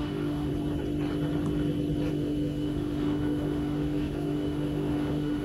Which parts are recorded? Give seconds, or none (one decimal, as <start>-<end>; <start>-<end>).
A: 0.5-2.1